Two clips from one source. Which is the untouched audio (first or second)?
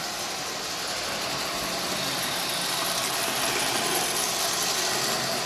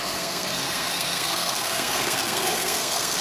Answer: first